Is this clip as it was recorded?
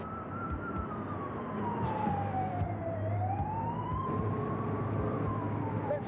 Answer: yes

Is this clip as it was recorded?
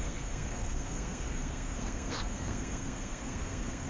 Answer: no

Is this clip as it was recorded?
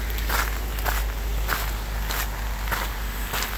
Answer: yes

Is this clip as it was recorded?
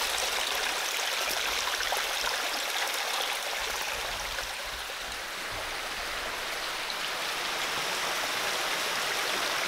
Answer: yes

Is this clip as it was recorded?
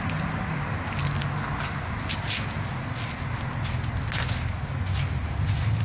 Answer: yes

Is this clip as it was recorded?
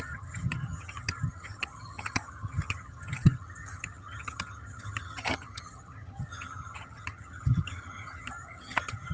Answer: no